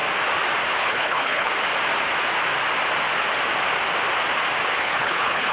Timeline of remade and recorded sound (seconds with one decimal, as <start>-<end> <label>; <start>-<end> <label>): 0.0-0.8 recorded; 0.8-1.5 remade; 1.5-4.8 recorded; 4.8-5.5 remade

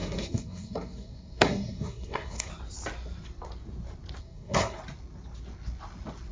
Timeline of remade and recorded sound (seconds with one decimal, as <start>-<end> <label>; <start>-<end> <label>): 0.0-2.5 remade; 2.5-4.2 recorded; 4.2-4.8 remade; 4.8-6.3 recorded

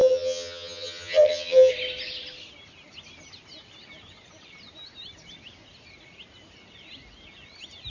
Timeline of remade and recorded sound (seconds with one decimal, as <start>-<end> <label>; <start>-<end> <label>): 0.0-1.7 remade; 1.7-7.9 recorded

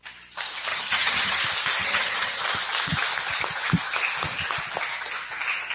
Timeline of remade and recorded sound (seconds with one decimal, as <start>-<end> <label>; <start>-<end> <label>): 0.0-0.7 recorded; 0.7-1.4 remade; 1.4-1.8 recorded; 1.8-2.4 remade; 2.4-5.7 recorded